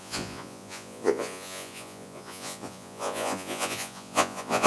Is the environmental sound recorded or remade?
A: remade